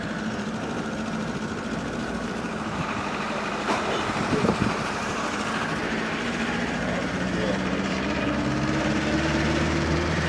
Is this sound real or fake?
fake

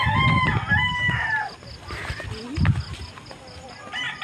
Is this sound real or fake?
real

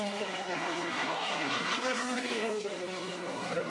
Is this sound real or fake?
fake